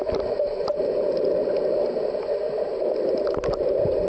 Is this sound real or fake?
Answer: real